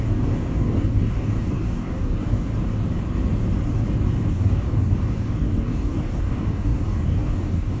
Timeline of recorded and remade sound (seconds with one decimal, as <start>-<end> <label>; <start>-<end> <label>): 0.0-2.5 remade; 2.5-4.3 recorded; 4.3-7.8 remade